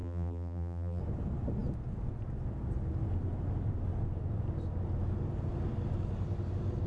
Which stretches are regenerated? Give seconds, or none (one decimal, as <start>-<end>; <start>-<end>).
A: 0.0-1.0